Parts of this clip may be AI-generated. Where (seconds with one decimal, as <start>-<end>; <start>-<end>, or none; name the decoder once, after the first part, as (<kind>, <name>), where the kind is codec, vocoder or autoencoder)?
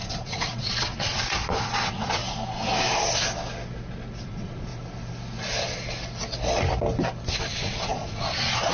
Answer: 0.0-2.2 (vocoder, Vocos); 4.2-4.7; 7.4-8.7